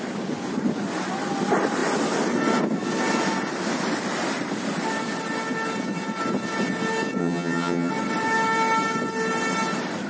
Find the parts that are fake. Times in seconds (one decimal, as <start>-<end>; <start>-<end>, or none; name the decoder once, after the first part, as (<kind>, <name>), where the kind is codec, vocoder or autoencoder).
7.2-7.9 (vocoder, HiFi-GAN)